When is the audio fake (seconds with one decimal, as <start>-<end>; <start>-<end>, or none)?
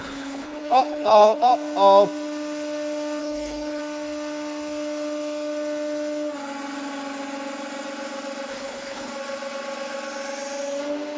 0.0-1.5; 3.2-3.8; 8.5-9.1